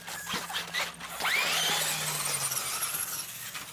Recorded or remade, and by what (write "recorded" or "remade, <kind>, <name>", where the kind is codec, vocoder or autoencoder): recorded